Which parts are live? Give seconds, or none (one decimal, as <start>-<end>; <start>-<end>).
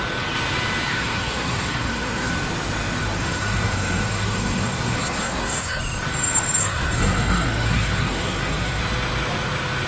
0.0-0.9; 2.3-3.0; 5.8-6.6; 8.8-9.9